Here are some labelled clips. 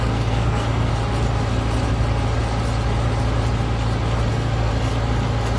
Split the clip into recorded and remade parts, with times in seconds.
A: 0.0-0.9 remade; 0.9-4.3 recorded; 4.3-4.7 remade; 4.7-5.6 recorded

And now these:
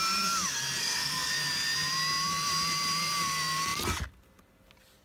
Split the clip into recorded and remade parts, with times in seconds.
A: 0.0-0.8 recorded; 0.8-1.3 remade; 1.3-5.0 recorded

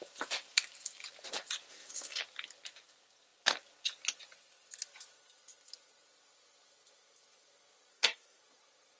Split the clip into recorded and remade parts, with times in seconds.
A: 0.0-1.7 recorded; 1.7-2.2 remade; 2.2-7.9 recorded; 7.9-8.4 remade; 8.4-9.0 recorded

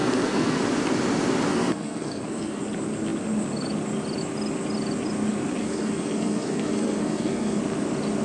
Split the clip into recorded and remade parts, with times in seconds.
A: 0.0-0.6 remade; 0.6-1.5 recorded; 1.5-2.6 remade; 2.6-5.6 recorded; 5.6-7.6 remade; 7.6-8.2 recorded

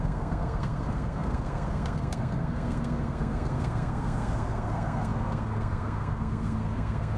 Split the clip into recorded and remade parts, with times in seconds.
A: 0.0-7.2 remade

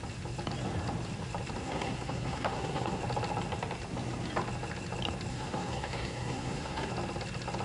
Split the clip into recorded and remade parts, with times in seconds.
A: 0.0-1.6 recorded; 1.6-3.0 remade; 3.0-5.3 recorded; 5.3-6.9 remade; 6.9-7.6 recorded